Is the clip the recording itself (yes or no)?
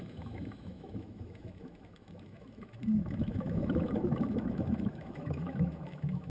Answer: no